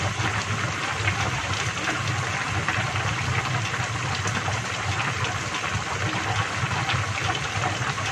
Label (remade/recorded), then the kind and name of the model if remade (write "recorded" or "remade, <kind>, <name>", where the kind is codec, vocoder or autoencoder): recorded